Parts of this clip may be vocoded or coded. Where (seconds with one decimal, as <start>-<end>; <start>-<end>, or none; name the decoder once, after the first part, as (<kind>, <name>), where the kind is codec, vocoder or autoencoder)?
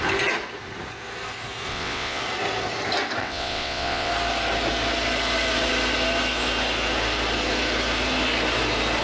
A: 1.7-2.2 (vocoder, WaveNeXt); 3.2-4.1